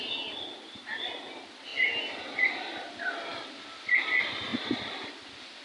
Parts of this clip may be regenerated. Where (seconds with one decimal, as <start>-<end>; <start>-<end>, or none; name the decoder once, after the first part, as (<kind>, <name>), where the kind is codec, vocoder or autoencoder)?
none